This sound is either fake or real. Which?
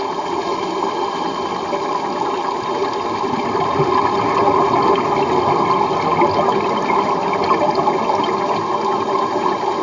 real